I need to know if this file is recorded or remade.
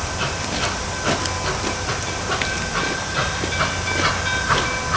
recorded